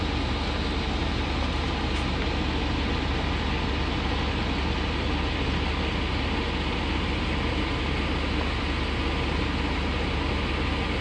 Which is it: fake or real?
real